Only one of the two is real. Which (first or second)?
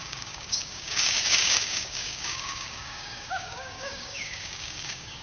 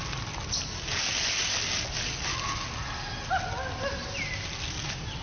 second